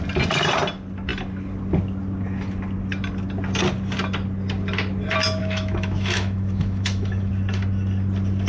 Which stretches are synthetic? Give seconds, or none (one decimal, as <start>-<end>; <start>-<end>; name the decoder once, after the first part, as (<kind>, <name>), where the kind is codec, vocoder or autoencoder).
5.4-7.3 (autoencoder, DAC-VAE)